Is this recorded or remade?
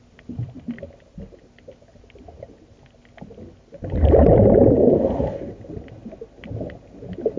recorded